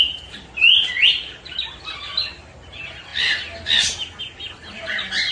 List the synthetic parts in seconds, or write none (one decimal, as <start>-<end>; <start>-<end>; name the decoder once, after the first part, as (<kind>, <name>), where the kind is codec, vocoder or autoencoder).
none